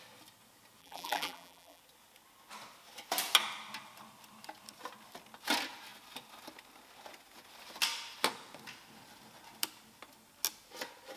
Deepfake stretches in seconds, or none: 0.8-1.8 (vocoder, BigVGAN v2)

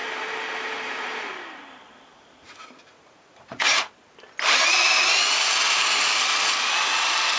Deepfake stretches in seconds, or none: 2.1-3.9 (vocoder, Vocos)

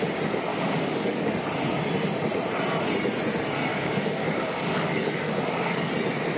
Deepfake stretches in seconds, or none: 0.5-1.3 (codec, DAC); 3.7-5.9